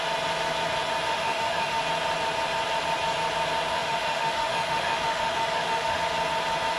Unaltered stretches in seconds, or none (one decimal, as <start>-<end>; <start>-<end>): 0.0-1.1; 1.8-3.7; 6.0-6.8